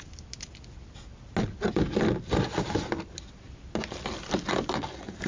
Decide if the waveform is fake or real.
real